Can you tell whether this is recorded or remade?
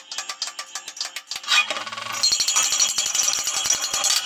recorded